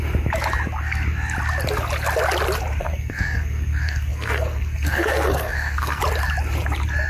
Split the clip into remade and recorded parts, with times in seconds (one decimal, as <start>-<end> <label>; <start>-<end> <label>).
0.0-2.8 recorded; 2.8-6.0 remade; 6.0-7.1 recorded